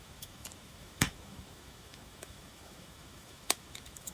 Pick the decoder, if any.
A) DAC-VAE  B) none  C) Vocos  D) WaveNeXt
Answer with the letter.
A